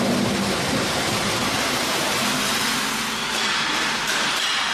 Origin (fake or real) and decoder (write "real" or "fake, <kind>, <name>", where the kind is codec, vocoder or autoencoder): real